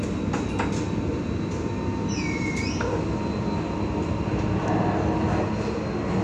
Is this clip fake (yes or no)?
no